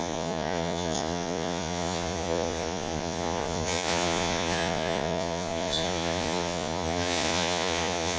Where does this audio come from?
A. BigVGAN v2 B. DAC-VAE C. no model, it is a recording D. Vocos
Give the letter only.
D